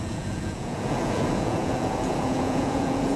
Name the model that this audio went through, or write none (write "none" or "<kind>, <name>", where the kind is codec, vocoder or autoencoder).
vocoder, Vocos